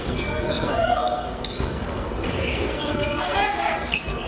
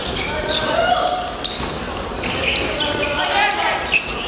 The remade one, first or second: first